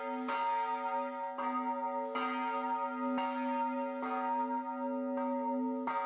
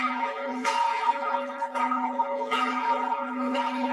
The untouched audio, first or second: first